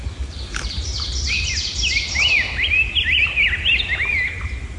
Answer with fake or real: real